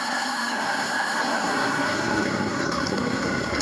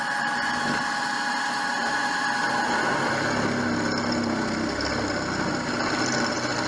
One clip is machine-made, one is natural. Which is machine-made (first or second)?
first